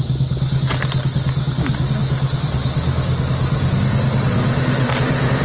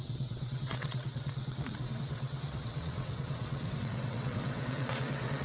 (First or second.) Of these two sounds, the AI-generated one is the second